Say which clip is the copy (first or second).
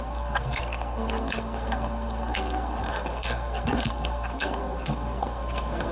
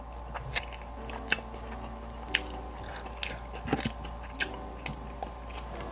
first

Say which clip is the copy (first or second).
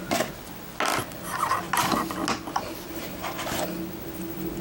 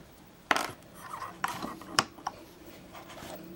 second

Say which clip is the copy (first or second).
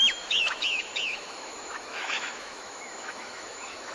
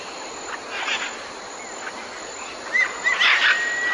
first